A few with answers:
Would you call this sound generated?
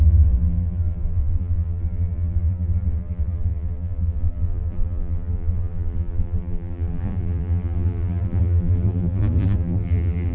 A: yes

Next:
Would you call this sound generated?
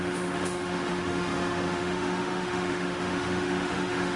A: yes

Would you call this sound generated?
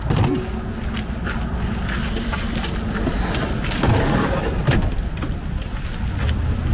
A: no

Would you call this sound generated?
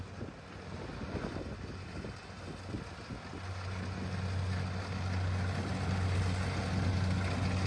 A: no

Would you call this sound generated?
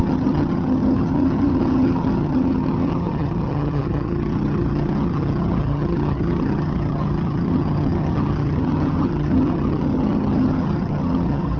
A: yes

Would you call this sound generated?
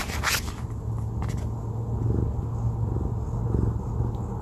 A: no